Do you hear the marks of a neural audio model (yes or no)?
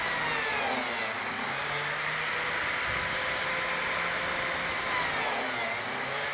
no